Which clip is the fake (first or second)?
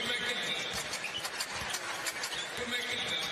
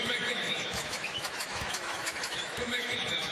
second